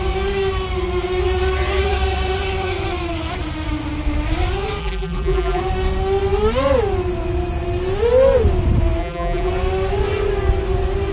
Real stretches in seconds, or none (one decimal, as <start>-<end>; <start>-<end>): 0.0-4.8; 5.6-9.0; 9.5-11.1